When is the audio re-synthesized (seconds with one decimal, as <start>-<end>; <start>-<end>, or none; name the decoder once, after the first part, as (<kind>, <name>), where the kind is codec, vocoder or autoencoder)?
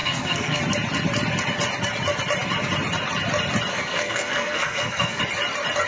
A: 0.0-0.6 (codec, SNAC); 3.7-5.2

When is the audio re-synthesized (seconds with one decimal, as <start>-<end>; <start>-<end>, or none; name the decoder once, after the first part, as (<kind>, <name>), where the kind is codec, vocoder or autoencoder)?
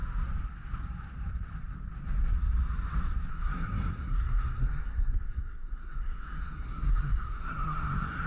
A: 3.3-8.3 (codec, SNAC)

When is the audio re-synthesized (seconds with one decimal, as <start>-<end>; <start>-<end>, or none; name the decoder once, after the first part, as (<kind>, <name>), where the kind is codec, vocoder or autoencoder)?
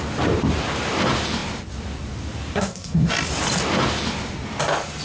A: 2.5-3.1 (codec, SNAC)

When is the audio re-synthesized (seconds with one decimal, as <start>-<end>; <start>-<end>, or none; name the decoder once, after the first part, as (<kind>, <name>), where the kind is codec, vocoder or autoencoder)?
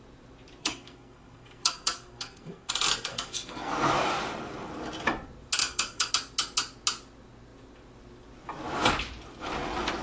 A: 0.6-2.7 (codec, SNAC); 3.1-3.7; 5.6-6.1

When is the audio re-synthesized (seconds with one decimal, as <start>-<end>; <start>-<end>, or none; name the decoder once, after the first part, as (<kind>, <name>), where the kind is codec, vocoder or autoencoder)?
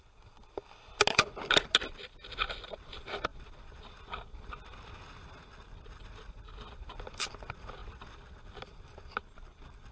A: none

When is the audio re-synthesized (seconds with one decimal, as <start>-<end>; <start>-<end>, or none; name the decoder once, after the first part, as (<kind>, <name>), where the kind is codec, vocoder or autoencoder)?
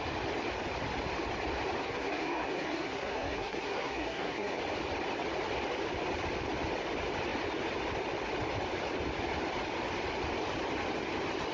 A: 1.8-4.6 (codec, SNAC)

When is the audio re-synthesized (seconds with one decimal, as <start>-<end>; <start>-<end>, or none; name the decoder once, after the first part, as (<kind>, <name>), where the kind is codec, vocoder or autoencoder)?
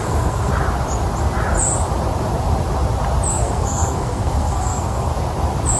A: 0.0-0.5 (codec, SNAC); 3.3-5.1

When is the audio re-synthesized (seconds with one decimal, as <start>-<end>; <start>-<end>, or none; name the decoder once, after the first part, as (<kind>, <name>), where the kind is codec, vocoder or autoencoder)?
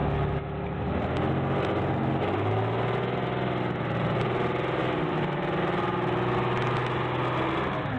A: none